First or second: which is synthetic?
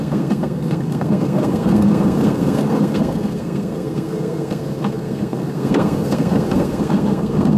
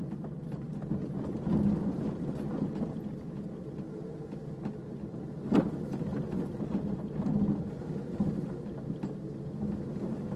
first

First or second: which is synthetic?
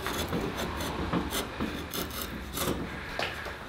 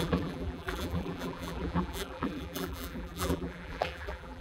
second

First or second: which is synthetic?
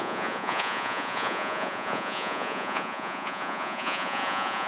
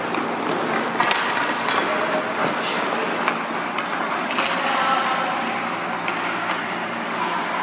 first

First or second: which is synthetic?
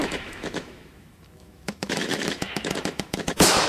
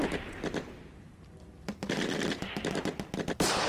first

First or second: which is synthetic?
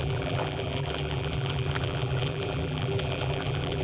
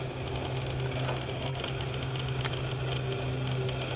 first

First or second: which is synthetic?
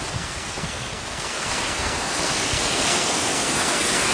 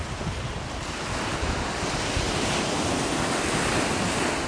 first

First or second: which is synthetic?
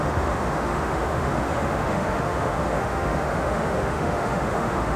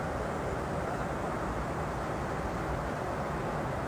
first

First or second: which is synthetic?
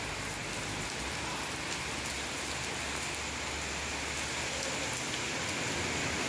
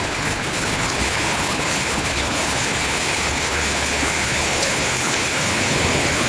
second